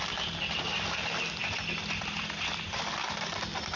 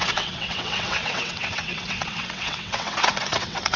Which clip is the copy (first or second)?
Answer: second